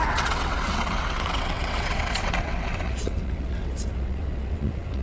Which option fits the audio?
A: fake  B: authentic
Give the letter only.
A